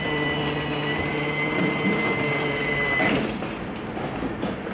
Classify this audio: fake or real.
real